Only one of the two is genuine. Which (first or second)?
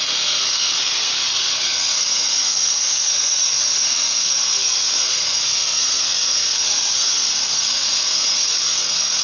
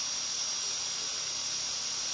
second